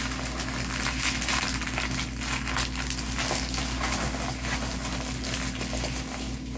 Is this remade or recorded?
recorded